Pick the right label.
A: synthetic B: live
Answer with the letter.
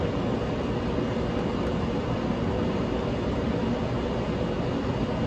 B